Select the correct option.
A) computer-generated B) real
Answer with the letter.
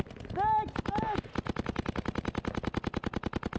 B